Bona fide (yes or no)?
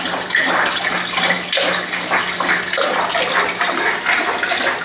yes